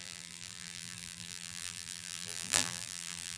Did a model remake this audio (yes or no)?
yes